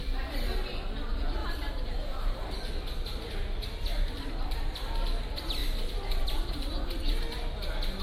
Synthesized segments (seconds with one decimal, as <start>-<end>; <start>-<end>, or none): 1.4-2.7; 3.9-4.6; 5.6-7.1